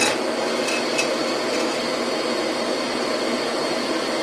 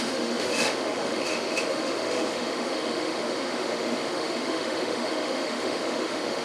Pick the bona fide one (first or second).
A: first